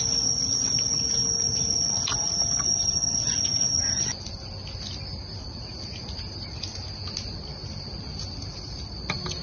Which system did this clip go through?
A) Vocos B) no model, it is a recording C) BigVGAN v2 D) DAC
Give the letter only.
B